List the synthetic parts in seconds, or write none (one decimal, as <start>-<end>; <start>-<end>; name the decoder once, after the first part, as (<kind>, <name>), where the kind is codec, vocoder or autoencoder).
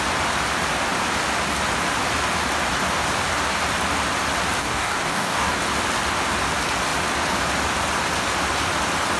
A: 4.6-5.6 (codec, DAC)